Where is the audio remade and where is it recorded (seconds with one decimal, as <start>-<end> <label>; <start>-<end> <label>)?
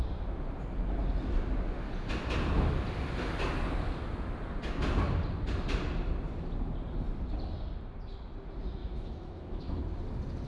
0.0-8.8 recorded; 8.8-9.8 remade; 9.8-10.5 recorded